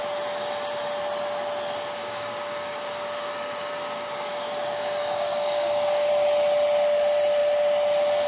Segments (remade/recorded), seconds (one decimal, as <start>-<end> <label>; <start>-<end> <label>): 0.0-2.0 recorded; 2.0-6.1 remade; 6.1-8.3 recorded